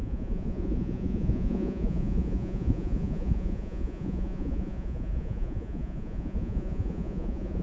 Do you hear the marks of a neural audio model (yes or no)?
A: yes